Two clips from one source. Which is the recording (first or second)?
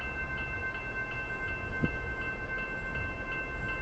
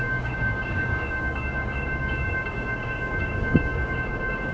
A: first